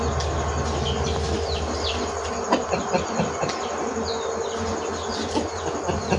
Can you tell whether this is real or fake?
real